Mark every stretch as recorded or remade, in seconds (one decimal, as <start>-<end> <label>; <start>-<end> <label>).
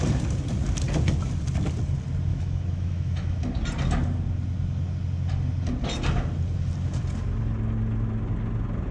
0.0-2.3 recorded; 2.3-3.4 remade; 3.4-8.9 recorded